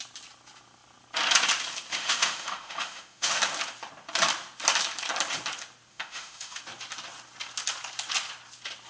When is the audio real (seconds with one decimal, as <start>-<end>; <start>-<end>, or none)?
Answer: 0.0-1.9; 3.4-5.9; 6.6-8.9